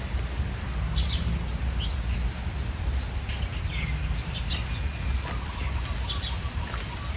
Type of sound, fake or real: real